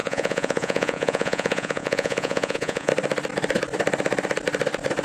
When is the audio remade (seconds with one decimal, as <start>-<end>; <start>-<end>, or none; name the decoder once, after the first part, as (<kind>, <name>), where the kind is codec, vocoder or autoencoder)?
0.0-2.9 (vocoder, Vocos)